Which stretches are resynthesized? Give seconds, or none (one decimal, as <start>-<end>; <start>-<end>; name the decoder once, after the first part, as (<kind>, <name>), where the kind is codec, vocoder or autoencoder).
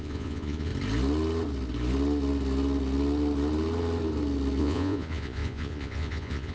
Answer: 0.0-0.7 (vocoder, Vocos); 4.6-6.5